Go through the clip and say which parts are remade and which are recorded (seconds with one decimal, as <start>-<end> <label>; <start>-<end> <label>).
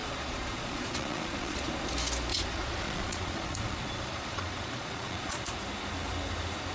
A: 0.0-1.7 remade; 1.7-2.3 recorded; 2.3-5.4 remade; 5.4-6.7 recorded